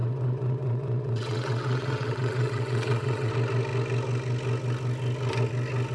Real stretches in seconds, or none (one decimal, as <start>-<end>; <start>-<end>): 3.3-5.9